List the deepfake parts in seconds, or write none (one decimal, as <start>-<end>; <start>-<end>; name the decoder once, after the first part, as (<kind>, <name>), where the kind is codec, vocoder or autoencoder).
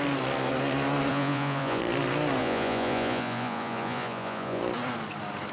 1.1-1.8 (vocoder, Vocos); 2.4-4.6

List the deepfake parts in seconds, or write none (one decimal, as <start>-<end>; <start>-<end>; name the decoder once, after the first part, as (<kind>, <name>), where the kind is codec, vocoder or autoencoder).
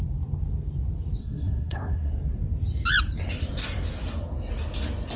1.2-2.1 (codec, SNAC)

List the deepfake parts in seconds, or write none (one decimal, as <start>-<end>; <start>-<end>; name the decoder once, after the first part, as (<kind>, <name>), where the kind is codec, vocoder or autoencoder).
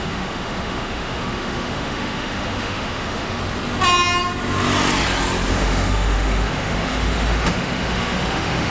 0.0-3.4 (autoencoder, DAC-VAE); 5.5-8.7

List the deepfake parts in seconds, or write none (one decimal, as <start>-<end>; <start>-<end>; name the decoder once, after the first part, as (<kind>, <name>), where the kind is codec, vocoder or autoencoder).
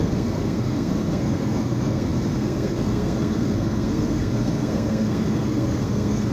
0.0-6.3 (codec, SNAC)